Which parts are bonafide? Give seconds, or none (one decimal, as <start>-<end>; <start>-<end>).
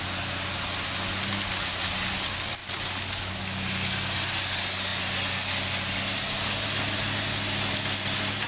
0.0-8.5